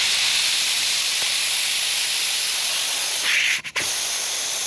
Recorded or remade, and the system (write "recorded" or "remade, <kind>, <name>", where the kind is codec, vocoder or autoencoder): recorded